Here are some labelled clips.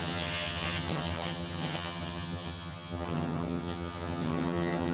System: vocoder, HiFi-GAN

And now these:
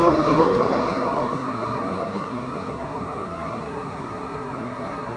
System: codec, SNAC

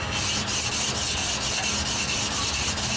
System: none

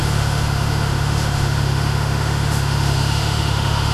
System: autoencoder, DAC-VAE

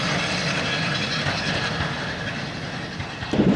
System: none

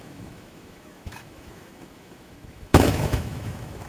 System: autoencoder, DAC-VAE